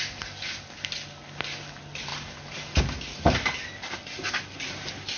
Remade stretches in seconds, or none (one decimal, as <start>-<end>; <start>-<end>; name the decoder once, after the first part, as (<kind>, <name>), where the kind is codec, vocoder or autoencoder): none